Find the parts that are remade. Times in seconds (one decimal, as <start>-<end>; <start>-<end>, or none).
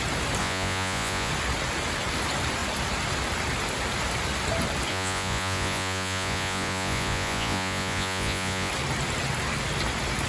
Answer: 0.4-1.3; 4.9-8.7